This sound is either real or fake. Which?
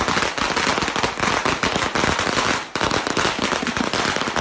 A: real